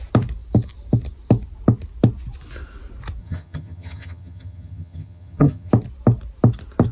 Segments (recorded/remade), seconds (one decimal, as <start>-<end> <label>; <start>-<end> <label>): 0.0-3.2 recorded; 3.2-5.7 remade; 5.7-6.9 recorded